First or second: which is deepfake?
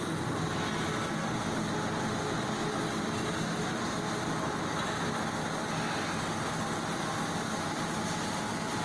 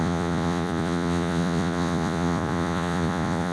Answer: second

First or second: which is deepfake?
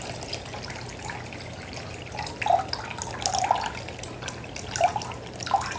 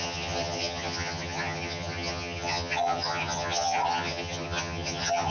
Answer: second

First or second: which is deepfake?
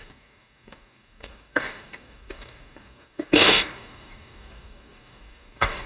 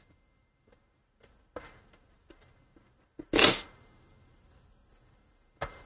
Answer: first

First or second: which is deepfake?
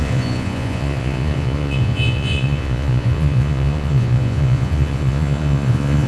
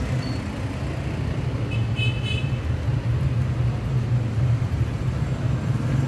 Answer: first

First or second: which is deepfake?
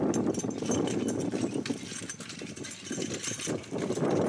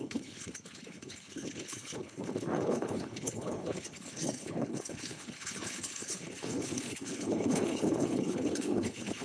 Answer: second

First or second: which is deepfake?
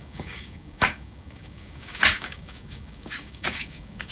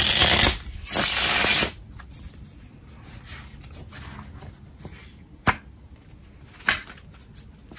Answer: first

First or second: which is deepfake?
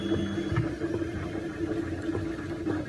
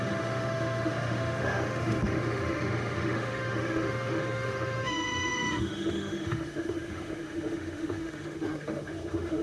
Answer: second